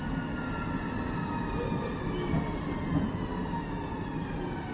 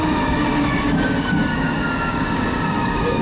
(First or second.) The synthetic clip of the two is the second